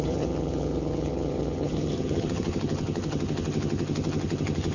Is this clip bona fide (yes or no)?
no